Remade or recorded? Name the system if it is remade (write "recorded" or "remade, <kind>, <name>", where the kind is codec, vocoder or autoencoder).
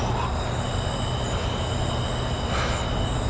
recorded